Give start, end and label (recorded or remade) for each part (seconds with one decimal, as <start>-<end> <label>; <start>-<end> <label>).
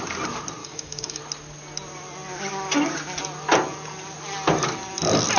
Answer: 0.0-0.6 recorded; 0.6-1.2 remade; 1.2-5.4 recorded